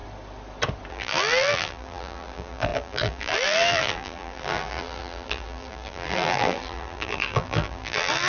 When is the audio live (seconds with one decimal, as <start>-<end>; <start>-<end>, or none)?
0.0-0.9